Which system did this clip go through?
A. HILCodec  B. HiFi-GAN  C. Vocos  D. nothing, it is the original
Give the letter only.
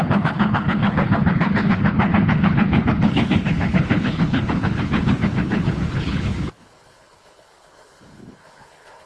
A